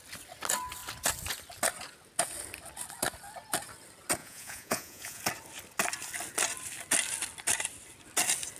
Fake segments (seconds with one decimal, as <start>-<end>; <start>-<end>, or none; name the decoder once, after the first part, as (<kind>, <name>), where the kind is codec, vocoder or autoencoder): 4.2-5.2 (vocoder, Vocos)